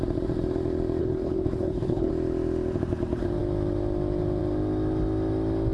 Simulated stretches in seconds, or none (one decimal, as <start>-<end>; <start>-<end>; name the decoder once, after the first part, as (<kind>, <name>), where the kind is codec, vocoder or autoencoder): 1.0-2.1 (codec, HILCodec)